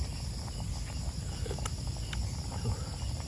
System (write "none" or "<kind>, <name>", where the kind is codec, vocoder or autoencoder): none